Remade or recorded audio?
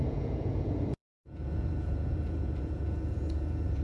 remade